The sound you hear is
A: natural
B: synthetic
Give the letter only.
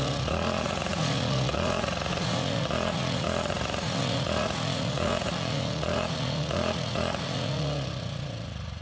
B